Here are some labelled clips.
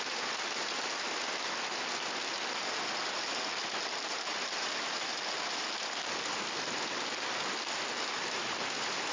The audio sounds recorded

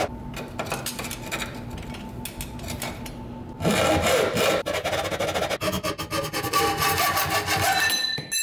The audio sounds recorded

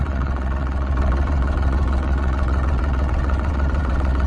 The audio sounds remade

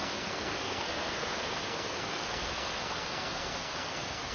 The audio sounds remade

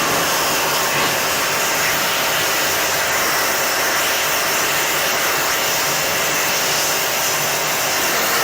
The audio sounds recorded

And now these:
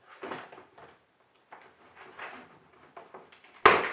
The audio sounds recorded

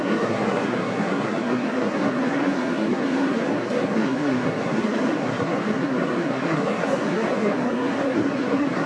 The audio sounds remade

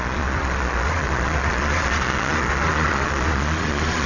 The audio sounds remade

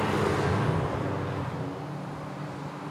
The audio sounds recorded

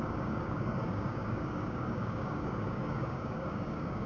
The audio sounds remade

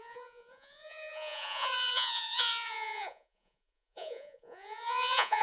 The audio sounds remade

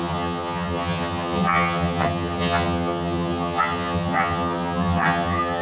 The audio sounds remade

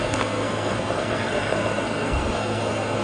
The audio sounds remade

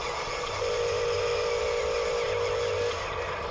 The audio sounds recorded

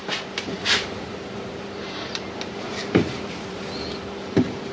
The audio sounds remade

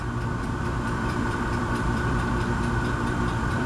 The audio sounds remade